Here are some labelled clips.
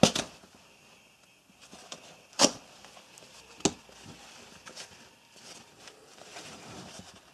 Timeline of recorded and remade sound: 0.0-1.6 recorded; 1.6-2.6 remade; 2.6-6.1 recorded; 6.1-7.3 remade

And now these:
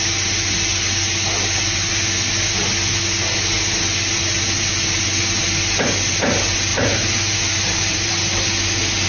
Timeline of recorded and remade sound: 0.0-6.7 recorded; 6.7-8.1 remade; 8.1-9.1 recorded

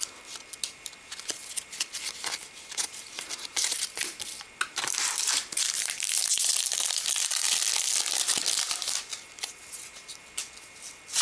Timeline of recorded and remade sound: 0.0-2.4 recorded; 2.4-4.2 remade; 4.2-11.2 recorded